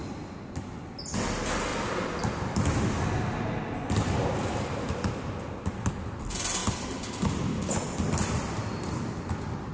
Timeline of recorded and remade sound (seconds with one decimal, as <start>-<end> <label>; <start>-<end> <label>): 0.0-9.7 recorded